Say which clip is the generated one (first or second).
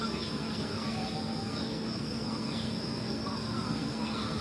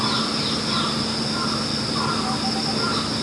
first